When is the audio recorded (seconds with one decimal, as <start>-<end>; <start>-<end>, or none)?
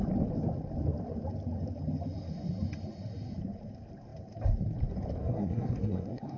0.0-5.2